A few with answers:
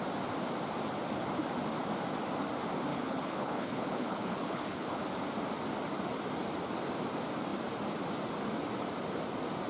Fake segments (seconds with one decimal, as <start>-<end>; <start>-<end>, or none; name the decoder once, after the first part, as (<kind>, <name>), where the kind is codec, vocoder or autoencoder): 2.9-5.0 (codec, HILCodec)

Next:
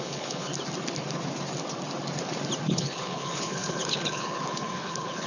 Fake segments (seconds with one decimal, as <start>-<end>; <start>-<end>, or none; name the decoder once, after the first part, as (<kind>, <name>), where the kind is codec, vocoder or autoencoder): 0.0-0.5 (codec, HILCodec); 2.7-5.3

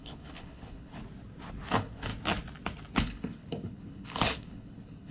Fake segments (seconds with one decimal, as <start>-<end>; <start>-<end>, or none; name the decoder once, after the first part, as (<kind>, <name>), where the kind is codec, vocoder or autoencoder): 0.0-1.0 (codec, HILCodec); 1.7-2.1; 2.9-5.1